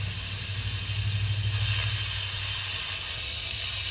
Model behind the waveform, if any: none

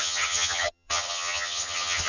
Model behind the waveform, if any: vocoder, HiFi-GAN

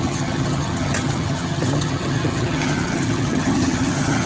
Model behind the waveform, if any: vocoder, HiFi-GAN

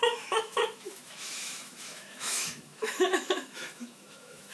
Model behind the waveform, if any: autoencoder, DAC-VAE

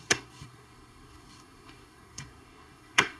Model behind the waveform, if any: codec, SNAC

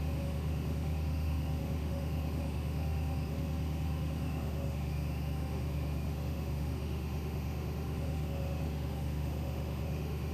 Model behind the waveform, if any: autoencoder, DAC-VAE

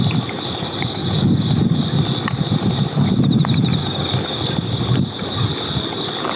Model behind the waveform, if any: none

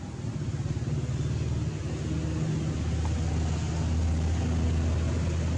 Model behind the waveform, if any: none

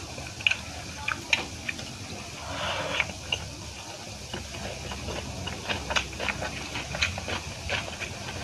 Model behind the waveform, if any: none